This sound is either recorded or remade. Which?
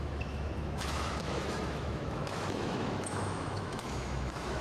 remade